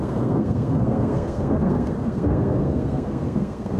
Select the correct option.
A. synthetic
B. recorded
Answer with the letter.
A